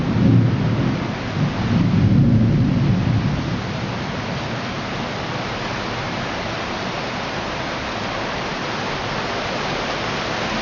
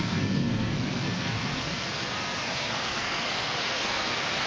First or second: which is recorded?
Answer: first